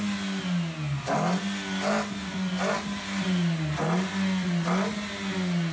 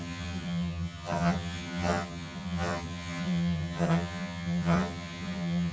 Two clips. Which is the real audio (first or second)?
first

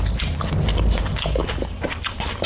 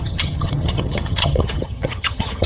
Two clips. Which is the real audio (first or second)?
first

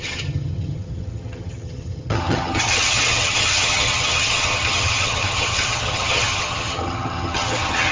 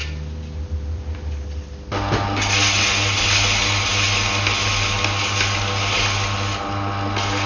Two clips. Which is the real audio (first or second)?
second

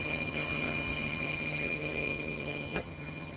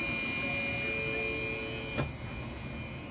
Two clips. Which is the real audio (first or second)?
second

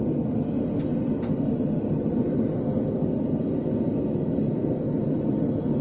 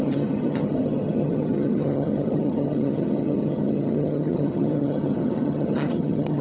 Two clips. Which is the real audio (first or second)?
first